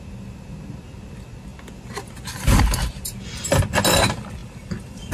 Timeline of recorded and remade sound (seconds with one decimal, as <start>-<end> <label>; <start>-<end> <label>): 0.0-5.1 recorded